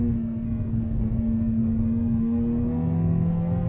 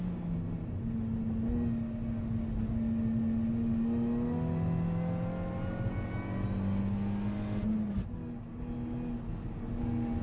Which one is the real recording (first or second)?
second